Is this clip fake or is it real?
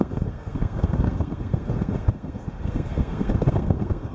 fake